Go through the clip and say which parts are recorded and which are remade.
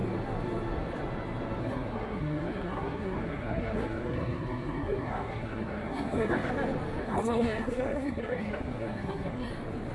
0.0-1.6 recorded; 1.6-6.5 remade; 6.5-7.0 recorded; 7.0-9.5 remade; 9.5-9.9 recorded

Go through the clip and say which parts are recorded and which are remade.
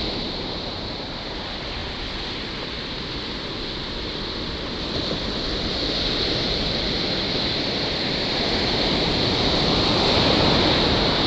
0.0-11.3 recorded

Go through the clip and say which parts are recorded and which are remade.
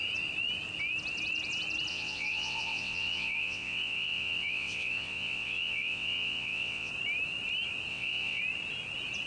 0.0-1.9 recorded; 1.9-6.9 remade; 6.9-7.9 recorded; 7.9-8.4 remade; 8.4-9.3 recorded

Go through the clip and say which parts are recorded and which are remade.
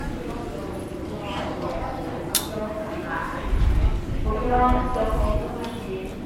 0.0-6.3 recorded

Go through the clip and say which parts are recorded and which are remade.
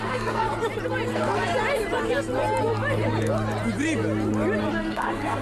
0.0-0.5 remade; 0.5-1.1 recorded; 1.1-1.5 remade; 1.5-4.7 recorded; 4.7-5.4 remade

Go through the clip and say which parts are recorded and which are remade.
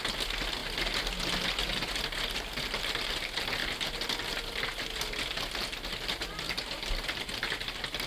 0.0-8.1 recorded